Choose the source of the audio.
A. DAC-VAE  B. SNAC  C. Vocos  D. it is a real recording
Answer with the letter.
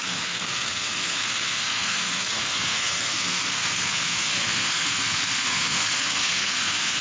B